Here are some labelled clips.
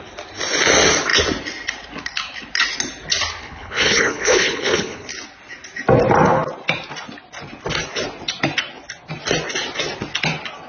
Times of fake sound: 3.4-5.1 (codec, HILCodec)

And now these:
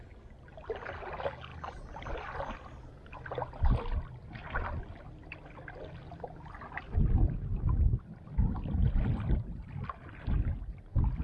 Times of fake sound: 1.5-2.1 (vocoder, BigVGAN v2)

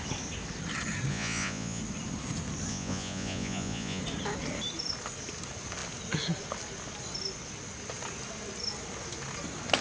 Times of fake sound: 1.1-1.8 (vocoder, Vocos); 2.7-4.0

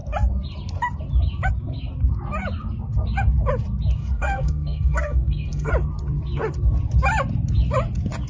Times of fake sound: 4.0-5.7 (codec, SNAC)